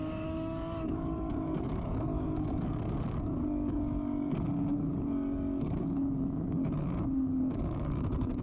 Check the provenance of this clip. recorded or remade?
remade